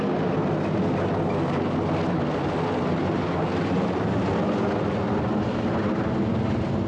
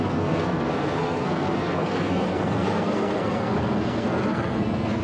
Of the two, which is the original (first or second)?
first